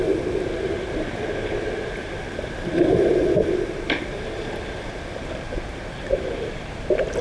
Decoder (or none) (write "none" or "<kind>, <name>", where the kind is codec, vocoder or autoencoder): none